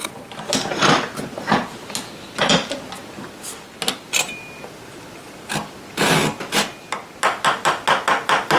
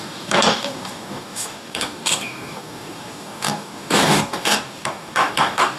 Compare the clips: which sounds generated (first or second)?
second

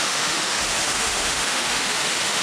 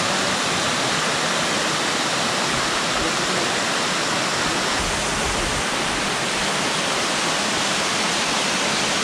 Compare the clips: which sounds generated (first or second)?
first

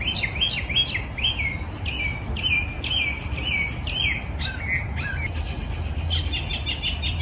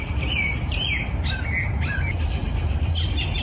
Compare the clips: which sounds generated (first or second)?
second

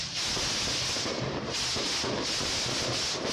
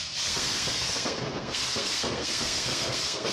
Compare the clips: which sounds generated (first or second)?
second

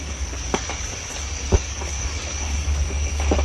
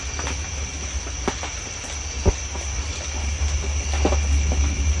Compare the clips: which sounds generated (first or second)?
first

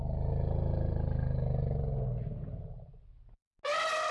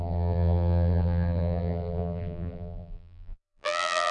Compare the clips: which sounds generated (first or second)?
second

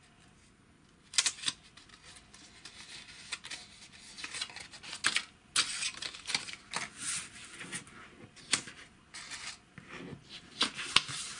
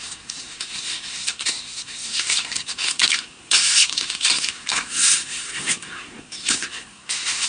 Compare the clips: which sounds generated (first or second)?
second